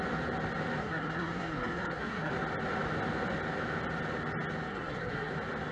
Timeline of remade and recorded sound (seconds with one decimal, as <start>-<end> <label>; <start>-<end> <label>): 0.0-0.8 recorded; 0.8-2.3 remade; 2.3-4.7 recorded; 4.7-5.3 remade; 5.3-5.7 recorded